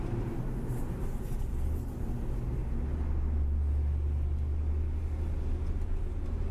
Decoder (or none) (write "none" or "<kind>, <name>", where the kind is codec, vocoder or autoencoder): none